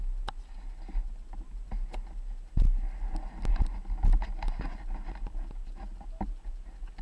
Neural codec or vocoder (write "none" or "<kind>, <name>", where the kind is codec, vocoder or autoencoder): none